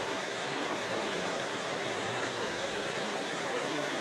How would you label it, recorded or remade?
remade